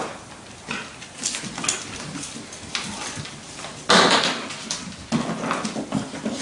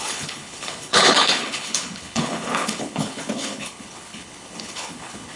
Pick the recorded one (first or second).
first